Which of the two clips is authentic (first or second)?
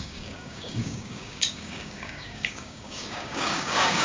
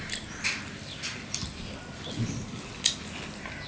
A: second